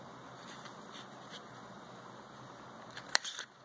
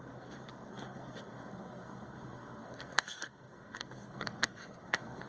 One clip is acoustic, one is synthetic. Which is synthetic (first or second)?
second